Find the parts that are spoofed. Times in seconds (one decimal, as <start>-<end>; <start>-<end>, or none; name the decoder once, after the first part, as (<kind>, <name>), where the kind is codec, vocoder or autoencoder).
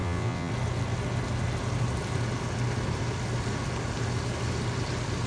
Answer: 0.0-0.5 (vocoder, WaveNeXt)